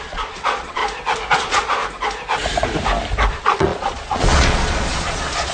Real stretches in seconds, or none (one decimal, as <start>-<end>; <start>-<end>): 0.8-1.3; 1.8-3.3